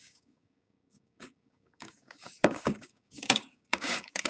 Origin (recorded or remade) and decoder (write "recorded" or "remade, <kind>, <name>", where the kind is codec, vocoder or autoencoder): remade, codec, DAC